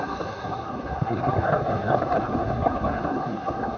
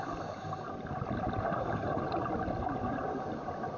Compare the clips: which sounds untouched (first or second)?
second